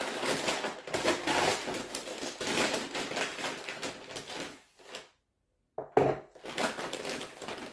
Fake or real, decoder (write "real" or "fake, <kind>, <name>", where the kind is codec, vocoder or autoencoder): real